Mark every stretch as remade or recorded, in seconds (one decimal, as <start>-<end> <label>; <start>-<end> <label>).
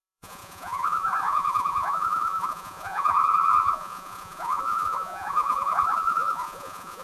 0.0-7.0 remade